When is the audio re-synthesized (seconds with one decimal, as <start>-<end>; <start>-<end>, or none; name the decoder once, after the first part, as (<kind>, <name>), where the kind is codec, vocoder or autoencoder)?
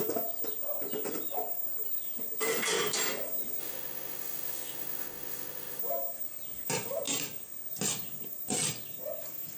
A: 3.6-5.8 (autoencoder, DAC-VAE)